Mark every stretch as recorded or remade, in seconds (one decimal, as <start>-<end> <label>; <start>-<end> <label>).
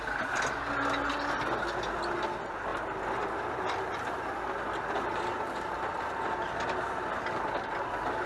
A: 0.0-8.3 recorded